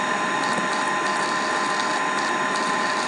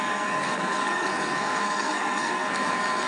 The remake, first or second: second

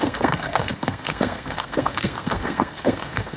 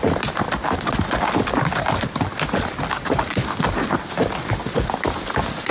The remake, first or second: first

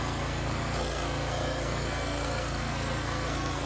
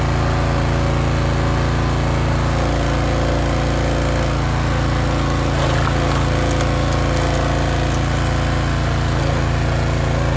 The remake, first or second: first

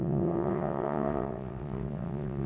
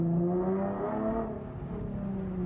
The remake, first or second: first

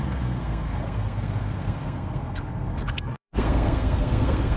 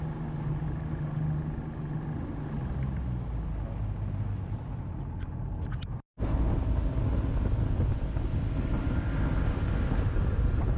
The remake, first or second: first